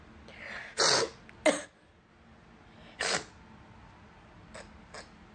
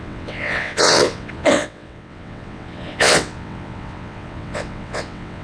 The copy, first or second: second